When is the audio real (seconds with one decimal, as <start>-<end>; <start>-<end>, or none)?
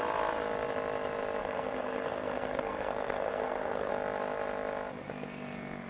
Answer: 0.0-1.4; 3.9-5.9